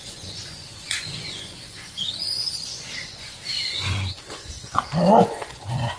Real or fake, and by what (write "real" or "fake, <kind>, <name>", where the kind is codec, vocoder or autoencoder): fake, vocoder, Vocos